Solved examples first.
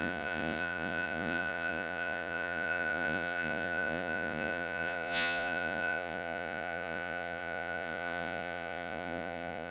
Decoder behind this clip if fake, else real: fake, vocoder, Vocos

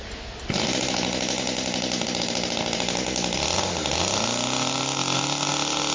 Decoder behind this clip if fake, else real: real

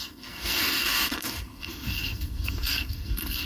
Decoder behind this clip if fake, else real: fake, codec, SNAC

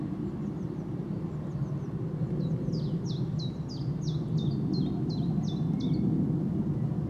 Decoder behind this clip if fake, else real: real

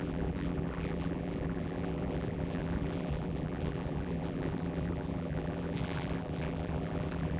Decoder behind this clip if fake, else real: fake, vocoder, BigVGAN v2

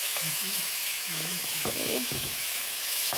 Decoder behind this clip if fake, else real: fake, autoencoder, DAC-VAE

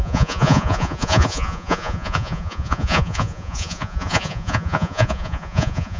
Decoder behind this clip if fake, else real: fake, vocoder, Vocos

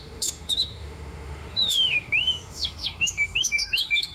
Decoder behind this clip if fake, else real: fake, autoencoder, DAC-VAE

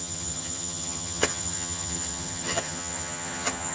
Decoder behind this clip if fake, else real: fake, vocoder, HiFi-GAN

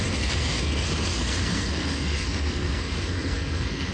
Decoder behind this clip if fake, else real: fake, codec, SNAC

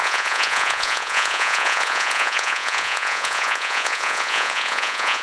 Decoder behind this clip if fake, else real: fake, vocoder, Vocos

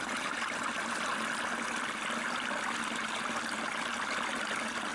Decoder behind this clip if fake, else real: real